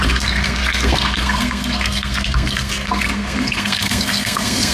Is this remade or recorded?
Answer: remade